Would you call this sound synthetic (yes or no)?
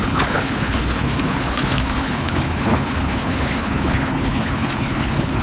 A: yes